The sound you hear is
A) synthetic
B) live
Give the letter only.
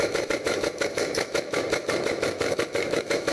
A